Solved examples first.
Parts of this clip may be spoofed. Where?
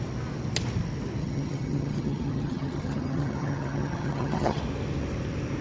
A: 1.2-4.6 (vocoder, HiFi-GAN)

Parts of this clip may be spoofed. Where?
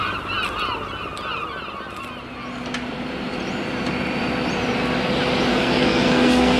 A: 5.5-6.6 (codec, SNAC)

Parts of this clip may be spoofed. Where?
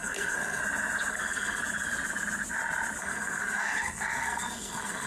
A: 0.0-0.6 (codec, SNAC); 1.1-1.6; 3.0-5.1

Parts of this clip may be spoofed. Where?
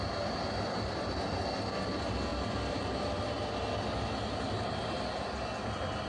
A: none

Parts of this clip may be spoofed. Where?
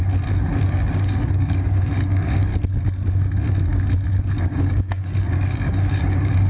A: 0.6-2.5 (codec, DAC); 4.4-6.5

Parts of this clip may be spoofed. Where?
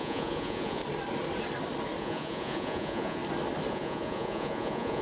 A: 0.0-0.8 (vocoder, Vocos); 2.0-3.2; 3.7-5.0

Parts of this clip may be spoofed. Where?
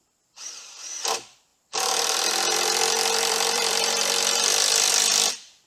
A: 0.0-5.7 (vocoder, BigVGAN v2)